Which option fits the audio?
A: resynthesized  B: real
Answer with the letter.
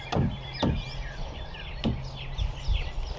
B